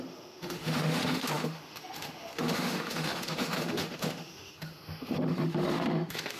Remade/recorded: remade